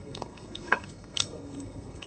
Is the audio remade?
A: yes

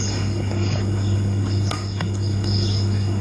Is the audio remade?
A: yes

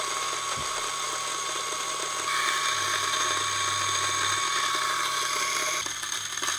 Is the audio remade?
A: no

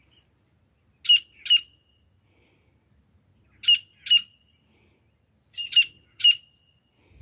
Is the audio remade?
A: no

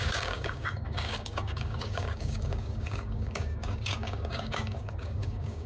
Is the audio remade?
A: yes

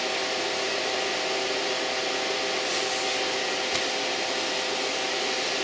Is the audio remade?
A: no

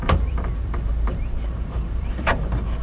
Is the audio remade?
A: yes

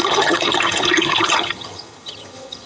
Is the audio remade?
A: yes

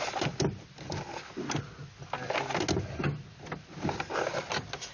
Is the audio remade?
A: no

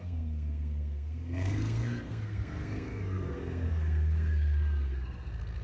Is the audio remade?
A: yes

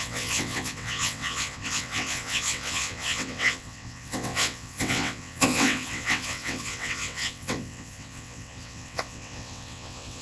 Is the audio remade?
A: yes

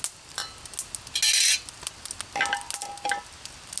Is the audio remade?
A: no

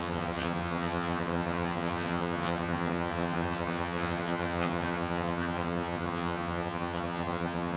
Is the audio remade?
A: yes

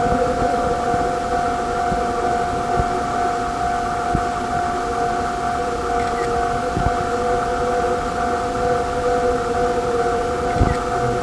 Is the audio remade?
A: no